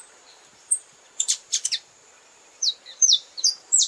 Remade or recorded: remade